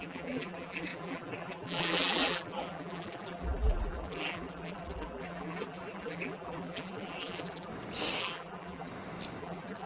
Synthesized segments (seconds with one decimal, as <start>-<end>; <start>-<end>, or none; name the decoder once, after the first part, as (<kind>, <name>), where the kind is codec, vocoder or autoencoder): 0.0-7.7 (vocoder, BigVGAN v2); 8.2-8.9; 9.4-9.9